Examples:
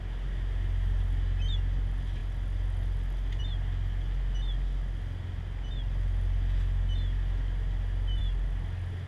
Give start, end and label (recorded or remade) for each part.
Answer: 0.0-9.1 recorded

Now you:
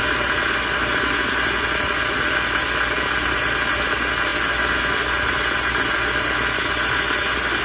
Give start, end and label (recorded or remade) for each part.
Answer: 0.0-7.6 recorded

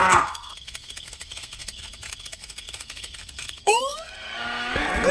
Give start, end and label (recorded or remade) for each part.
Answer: 0.0-5.1 remade